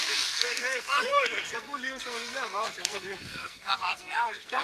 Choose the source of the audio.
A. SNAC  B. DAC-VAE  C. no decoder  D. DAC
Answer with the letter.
A